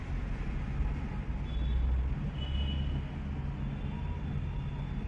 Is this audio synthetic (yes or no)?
no